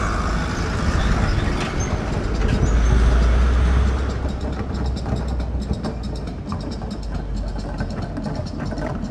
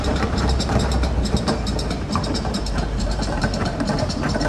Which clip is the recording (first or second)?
first